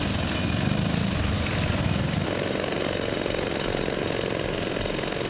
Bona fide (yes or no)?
yes